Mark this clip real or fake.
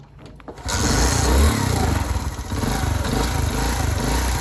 real